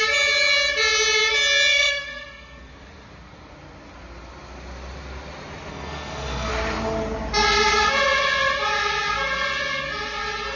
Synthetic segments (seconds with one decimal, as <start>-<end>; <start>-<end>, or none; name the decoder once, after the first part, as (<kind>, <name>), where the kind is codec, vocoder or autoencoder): 1.7-2.7 (codec, SNAC); 5.7-6.5